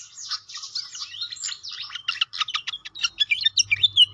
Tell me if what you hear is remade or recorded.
recorded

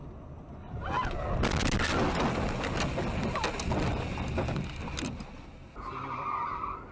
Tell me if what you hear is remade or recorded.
recorded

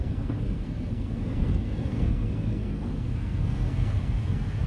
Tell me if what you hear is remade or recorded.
remade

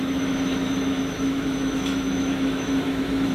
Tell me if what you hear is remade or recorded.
remade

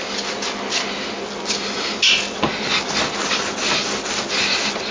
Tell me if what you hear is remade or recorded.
recorded